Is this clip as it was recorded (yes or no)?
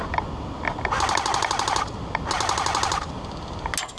yes